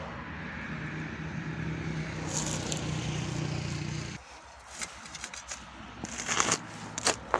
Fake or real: real